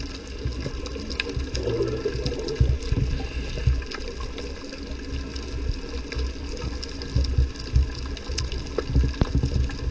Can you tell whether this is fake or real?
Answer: real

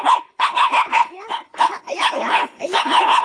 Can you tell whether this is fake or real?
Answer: fake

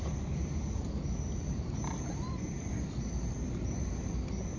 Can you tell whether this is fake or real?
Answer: real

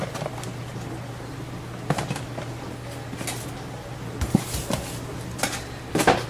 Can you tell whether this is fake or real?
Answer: real